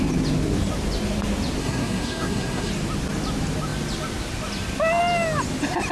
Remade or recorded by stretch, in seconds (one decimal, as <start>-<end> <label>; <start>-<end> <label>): 0.0-1.6 recorded; 1.6-2.7 remade; 2.7-5.9 recorded